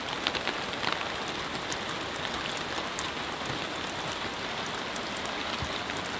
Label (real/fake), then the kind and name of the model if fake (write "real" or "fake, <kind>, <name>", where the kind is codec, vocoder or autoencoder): real